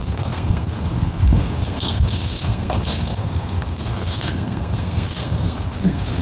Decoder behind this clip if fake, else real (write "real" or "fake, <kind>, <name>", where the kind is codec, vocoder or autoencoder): fake, codec, SNAC